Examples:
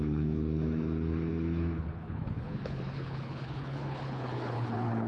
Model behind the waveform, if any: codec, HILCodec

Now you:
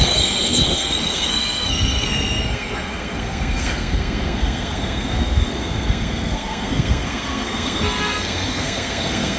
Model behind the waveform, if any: codec, SNAC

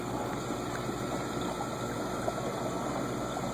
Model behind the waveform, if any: none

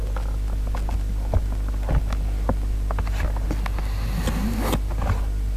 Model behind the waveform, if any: none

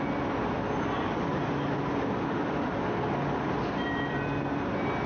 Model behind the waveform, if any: none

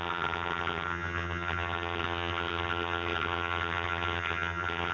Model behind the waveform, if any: vocoder, HiFi-GAN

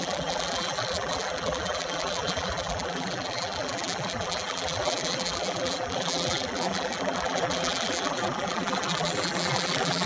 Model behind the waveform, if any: vocoder, BigVGAN v2